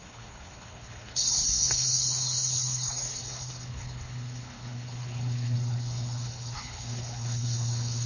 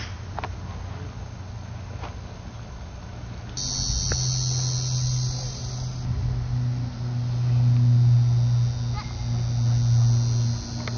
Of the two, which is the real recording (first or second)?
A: second